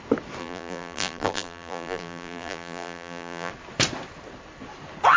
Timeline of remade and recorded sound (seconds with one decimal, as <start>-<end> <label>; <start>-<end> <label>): 0.0-0.4 recorded; 0.4-3.5 remade; 3.5-5.2 recorded